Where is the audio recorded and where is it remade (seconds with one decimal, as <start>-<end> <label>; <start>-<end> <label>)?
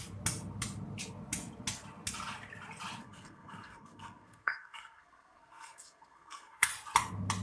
0.0-3.0 recorded; 3.0-6.7 remade; 6.7-7.4 recorded